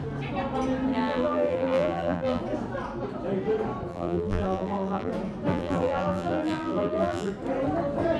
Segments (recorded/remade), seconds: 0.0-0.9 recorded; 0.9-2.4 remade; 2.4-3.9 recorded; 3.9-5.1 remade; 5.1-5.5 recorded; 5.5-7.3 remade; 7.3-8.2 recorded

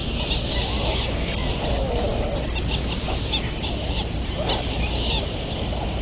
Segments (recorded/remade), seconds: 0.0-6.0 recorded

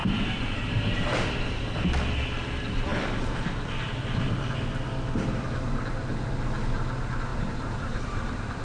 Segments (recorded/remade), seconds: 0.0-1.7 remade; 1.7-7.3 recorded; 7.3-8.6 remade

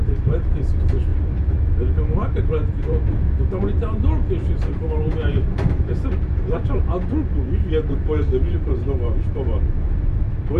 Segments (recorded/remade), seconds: 0.0-1.1 remade; 1.1-2.4 recorded; 2.4-3.1 remade; 3.1-4.3 recorded; 4.3-6.8 remade; 6.8-7.4 recorded; 7.4-10.6 remade